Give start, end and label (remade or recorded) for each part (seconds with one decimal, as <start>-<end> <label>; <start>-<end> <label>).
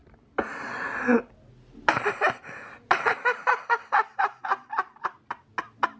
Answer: 0.0-6.0 recorded